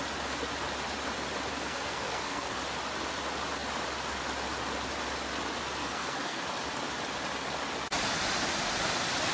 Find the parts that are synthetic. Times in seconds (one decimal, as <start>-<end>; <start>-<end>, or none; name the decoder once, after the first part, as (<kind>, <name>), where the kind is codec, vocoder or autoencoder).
1.5-2.6 (codec, SNAC); 5.8-6.4